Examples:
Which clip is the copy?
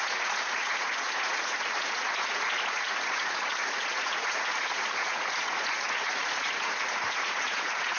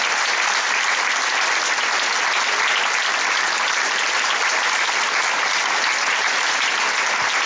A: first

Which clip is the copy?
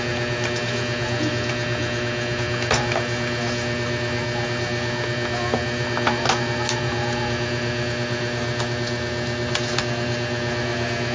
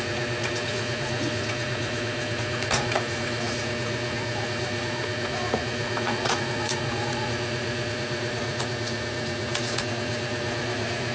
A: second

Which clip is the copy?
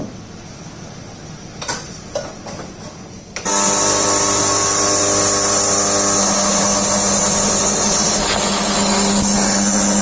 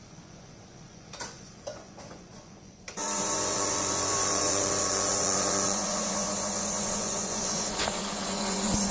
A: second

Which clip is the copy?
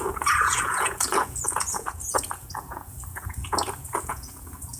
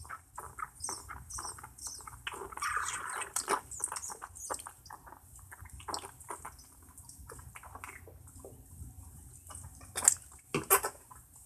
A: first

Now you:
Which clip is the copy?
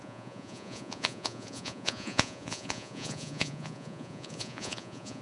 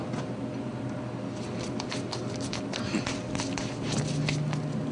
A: first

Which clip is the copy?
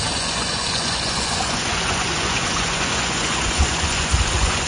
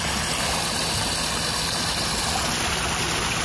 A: first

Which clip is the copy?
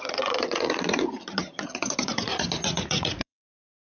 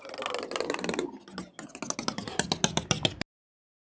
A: first